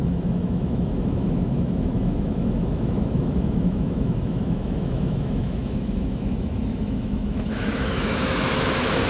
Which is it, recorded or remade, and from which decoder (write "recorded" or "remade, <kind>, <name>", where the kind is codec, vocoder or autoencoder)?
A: remade, autoencoder, DAC-VAE